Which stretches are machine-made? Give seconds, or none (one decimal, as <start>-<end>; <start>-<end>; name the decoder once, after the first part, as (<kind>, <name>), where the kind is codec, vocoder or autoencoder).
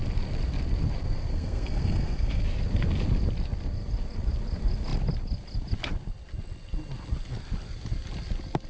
1.3-2.4 (codec, SNAC)